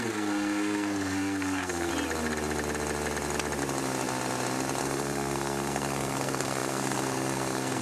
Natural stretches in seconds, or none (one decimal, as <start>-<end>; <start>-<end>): 1.9-4.8

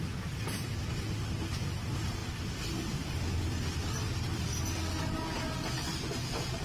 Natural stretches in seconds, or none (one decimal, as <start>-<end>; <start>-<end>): 0.0-6.6

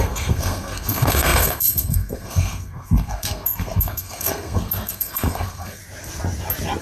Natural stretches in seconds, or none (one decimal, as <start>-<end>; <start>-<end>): 5.8-6.8

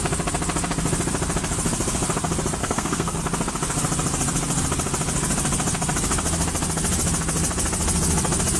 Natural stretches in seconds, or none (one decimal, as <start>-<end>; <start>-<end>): 0.0-2.6; 3.2-8.6

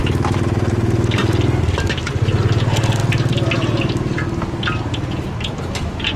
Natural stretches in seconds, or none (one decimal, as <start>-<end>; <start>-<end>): 0.0-6.2

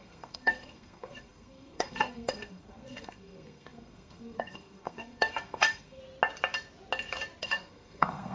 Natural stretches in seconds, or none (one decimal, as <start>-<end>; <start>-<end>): 6.0-7.4

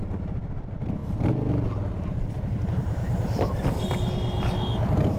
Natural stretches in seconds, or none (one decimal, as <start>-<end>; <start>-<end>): 0.0-5.2

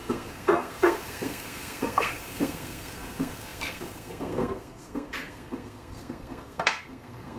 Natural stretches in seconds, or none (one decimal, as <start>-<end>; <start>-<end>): none